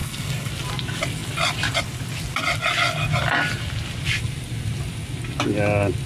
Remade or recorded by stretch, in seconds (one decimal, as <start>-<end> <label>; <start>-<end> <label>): 0.0-0.5 remade; 0.5-6.1 recorded